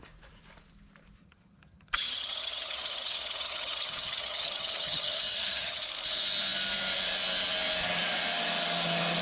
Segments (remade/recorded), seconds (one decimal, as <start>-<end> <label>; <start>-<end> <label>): 0.0-1.2 recorded; 1.2-5.8 remade; 5.8-9.2 recorded